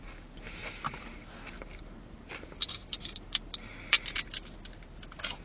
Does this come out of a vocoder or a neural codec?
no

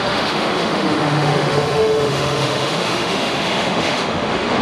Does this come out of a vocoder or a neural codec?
yes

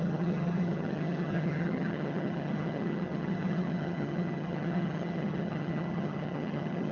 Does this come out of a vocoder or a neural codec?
yes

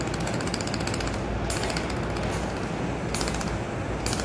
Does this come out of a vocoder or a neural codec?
no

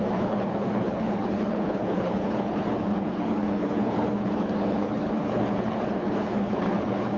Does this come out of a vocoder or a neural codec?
yes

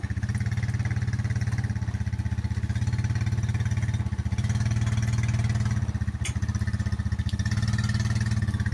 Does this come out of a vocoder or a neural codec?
no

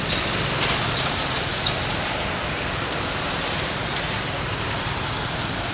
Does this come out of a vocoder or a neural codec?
no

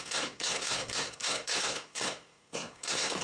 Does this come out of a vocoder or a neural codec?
yes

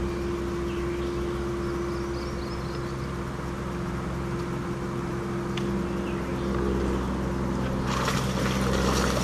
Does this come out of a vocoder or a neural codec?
no